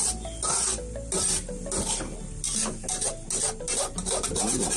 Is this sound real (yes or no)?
yes